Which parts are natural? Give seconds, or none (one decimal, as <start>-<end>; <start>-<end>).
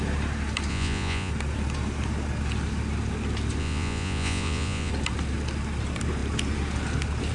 0.0-0.7; 1.3-3.6; 4.9-7.3